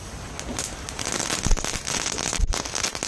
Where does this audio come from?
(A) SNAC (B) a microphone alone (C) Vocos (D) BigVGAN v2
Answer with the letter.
B